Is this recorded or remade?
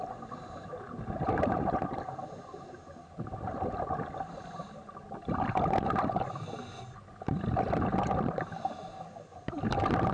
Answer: recorded